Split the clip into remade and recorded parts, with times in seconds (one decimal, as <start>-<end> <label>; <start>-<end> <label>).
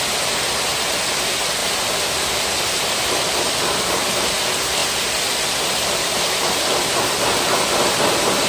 0.0-1.6 recorded; 1.6-3.3 remade; 3.3-8.5 recorded